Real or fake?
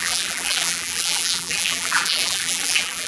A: fake